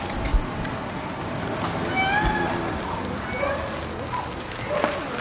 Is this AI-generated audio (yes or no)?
no